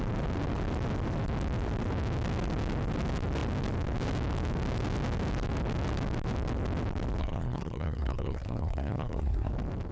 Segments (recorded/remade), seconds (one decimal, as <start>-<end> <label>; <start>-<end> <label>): 0.0-7.2 recorded; 7.2-9.5 remade; 9.5-9.9 recorded